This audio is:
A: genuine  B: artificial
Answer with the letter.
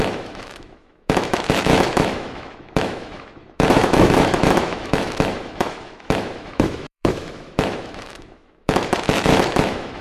B